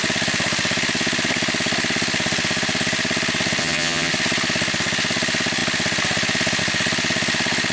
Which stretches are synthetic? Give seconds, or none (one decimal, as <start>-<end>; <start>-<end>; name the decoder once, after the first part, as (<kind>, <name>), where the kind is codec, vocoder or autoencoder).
3.6-4.1 (vocoder, HiFi-GAN)